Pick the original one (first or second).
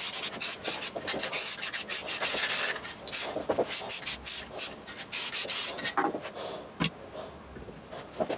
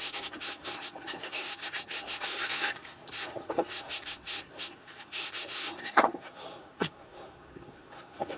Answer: first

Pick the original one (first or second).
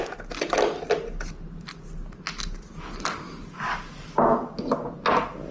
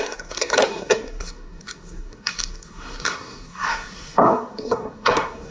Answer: first